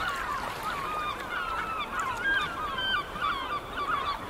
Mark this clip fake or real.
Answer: real